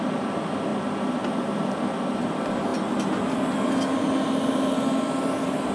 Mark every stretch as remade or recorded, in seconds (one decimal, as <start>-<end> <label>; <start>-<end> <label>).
0.0-5.7 recorded

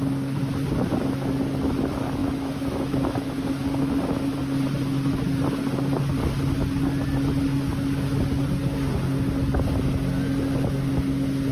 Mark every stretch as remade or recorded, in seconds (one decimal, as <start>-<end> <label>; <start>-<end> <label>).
0.0-2.2 recorded; 2.2-3.3 remade; 3.3-11.5 recorded